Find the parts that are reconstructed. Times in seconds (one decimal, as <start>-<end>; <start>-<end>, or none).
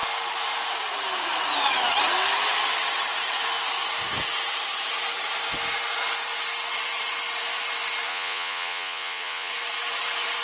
8.1-9.5